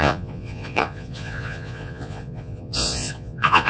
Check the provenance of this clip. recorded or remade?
remade